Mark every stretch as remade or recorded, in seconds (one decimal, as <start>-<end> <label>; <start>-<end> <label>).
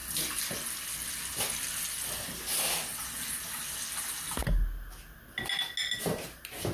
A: 0.0-6.7 recorded